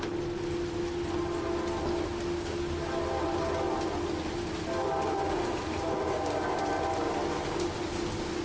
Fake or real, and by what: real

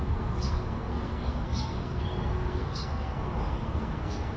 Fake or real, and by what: fake, codec, SNAC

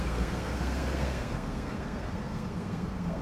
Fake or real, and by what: fake, codec, SNAC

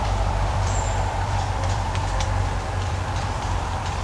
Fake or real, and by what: fake, vocoder, BigVGAN v2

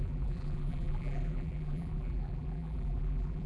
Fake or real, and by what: fake, vocoder, BigVGAN v2